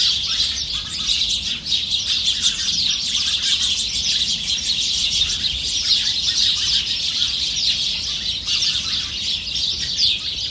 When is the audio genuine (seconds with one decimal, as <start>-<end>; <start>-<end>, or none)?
0.0-7.0; 7.7-10.5

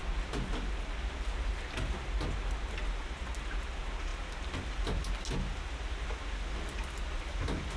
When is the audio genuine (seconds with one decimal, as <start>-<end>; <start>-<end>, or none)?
0.0-7.8

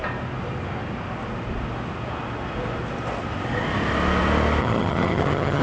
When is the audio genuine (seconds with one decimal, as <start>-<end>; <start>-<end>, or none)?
0.0-4.6

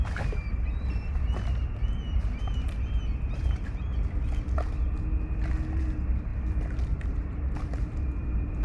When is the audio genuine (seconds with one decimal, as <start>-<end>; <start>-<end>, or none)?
2.2-3.4; 3.9-5.7; 6.3-7.0

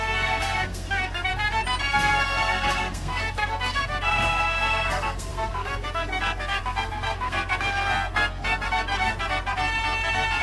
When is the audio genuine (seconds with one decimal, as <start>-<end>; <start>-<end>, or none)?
1.3-1.9; 9.1-10.4

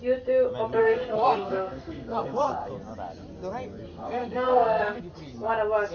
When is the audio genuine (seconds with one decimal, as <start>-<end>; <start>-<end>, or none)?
0.0-0.8; 2.7-3.9; 5.0-5.9